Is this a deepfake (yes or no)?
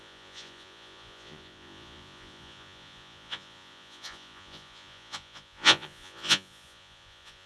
yes